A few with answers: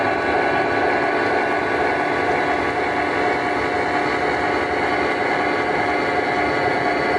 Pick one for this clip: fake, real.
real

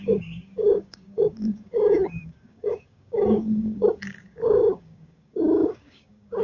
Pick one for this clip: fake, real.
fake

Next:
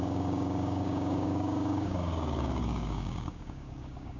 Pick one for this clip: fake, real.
fake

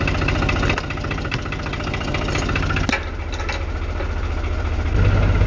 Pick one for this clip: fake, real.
real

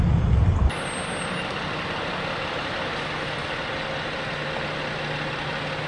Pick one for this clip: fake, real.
real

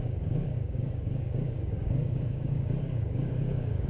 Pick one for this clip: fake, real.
fake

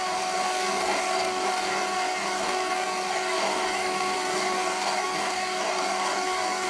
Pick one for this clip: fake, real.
fake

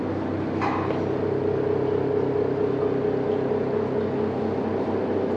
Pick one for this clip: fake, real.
real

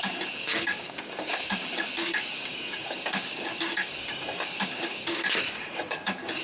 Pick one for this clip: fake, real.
fake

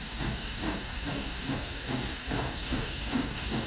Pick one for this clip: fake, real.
fake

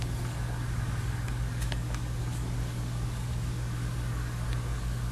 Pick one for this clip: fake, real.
fake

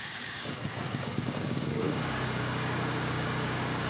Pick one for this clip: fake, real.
fake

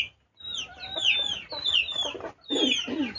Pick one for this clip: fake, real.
real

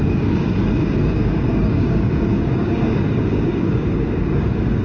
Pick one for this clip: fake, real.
fake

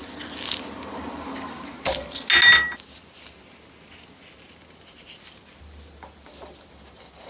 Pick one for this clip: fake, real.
real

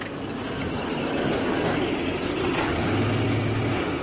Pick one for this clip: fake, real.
real